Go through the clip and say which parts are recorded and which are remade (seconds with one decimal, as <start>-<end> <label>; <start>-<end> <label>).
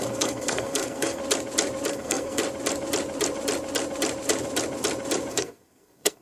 0.0-1.2 remade; 1.2-1.9 recorded; 1.9-2.4 remade; 2.4-5.3 recorded; 5.3-6.2 remade